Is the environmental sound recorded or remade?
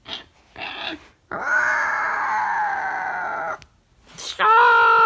recorded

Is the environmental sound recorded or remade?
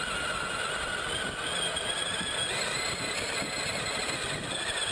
recorded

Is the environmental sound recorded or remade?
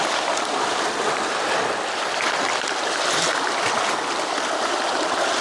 recorded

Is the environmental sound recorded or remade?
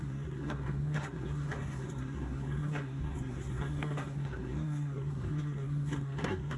remade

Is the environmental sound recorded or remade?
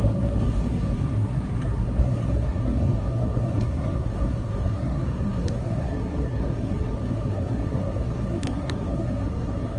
remade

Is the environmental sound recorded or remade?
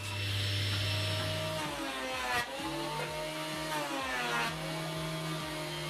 recorded